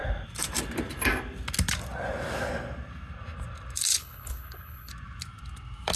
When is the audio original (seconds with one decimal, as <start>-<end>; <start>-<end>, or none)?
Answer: 0.0-3.9; 4.9-6.0